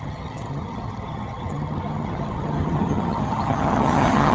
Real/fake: fake